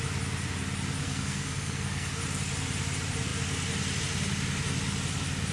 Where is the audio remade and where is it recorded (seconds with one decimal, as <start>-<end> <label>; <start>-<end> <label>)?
0.0-1.0 recorded; 1.0-2.1 remade; 2.1-5.5 recorded